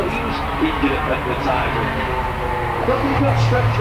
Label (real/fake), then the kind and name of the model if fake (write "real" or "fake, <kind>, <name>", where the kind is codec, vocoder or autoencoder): real